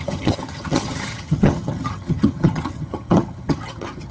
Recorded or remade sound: remade